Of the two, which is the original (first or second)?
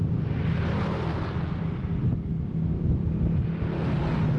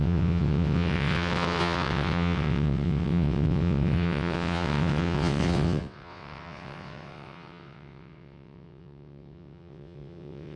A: first